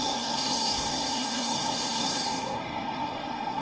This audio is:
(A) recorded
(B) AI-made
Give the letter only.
B